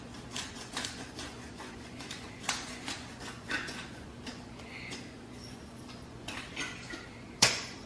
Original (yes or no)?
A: no